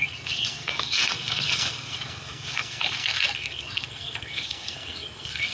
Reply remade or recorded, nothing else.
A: remade